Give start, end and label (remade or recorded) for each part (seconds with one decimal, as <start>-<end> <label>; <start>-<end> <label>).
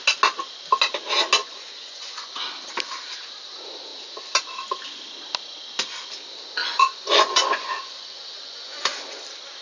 0.0-1.4 recorded; 1.4-2.3 remade; 2.3-6.6 recorded; 6.6-9.0 remade; 9.0-9.6 recorded